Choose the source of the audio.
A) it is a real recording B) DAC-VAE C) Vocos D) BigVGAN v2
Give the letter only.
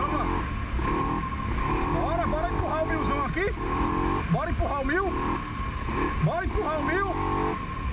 A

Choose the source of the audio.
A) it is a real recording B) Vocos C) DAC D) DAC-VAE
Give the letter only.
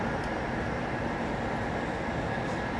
A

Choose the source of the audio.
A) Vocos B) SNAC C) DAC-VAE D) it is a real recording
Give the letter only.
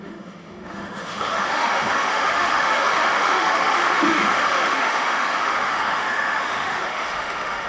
C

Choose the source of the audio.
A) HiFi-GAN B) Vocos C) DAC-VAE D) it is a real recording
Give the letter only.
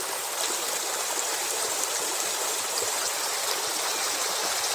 D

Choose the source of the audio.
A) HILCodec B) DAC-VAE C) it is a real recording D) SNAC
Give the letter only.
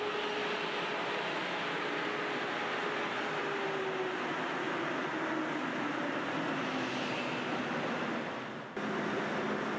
C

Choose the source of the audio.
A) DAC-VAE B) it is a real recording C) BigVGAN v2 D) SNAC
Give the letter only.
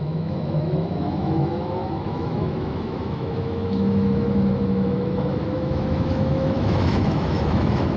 A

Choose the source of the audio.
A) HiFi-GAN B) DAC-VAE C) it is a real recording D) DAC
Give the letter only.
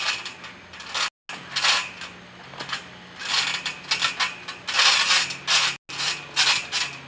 C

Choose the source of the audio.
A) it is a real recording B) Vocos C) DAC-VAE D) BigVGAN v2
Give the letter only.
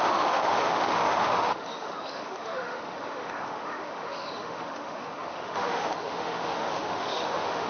C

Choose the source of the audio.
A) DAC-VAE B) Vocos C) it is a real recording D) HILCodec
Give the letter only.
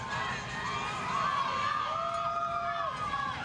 C